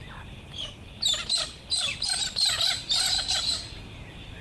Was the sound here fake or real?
real